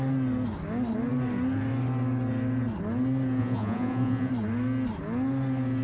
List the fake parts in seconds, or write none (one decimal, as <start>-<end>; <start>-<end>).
3.4-4.3